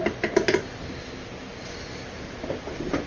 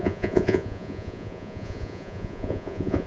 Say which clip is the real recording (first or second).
first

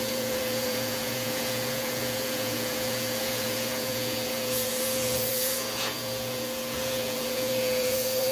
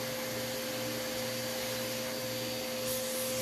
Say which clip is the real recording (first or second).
second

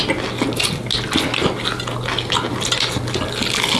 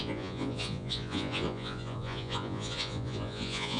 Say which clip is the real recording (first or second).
first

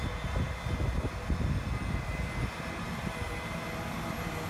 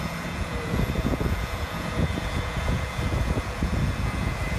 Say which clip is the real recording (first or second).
first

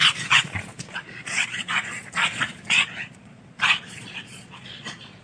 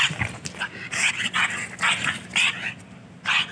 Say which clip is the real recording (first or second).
second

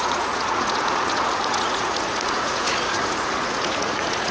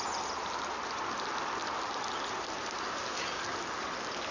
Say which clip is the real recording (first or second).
second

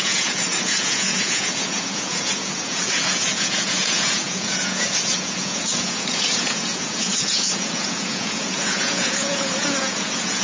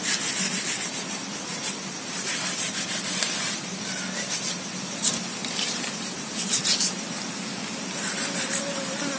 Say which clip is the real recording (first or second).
second